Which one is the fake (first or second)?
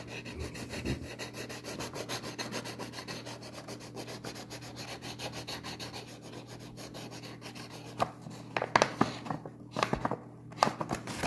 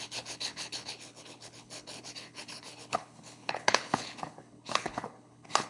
second